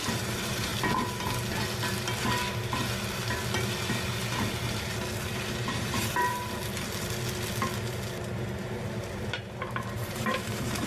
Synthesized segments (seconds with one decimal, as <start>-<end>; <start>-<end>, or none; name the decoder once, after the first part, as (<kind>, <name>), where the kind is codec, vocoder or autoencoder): 0.0-0.7 (vocoder, BigVGAN v2); 5.3-6.6; 8.3-10.9